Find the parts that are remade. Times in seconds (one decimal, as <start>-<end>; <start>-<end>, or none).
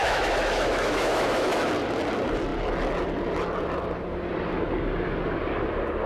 0.0-1.7